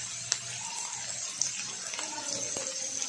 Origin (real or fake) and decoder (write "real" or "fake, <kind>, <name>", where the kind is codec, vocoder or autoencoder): real